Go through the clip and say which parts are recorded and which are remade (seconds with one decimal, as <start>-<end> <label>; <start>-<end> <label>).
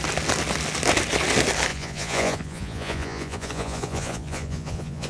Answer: 0.0-1.7 recorded; 1.7-5.1 remade